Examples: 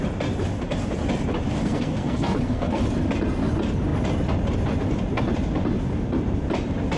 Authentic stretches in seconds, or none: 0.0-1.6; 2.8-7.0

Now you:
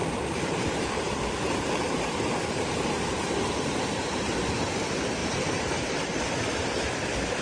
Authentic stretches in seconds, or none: 3.3-5.2; 6.2-7.4

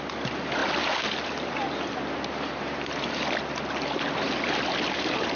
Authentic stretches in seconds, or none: 0.0-5.4

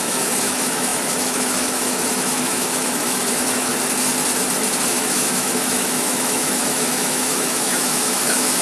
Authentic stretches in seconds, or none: 3.7-4.9

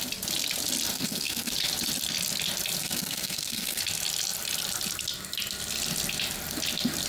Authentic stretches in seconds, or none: 0.0-0.9; 1.5-2.8; 3.8-7.1